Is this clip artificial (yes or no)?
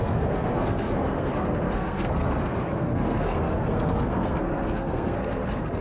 yes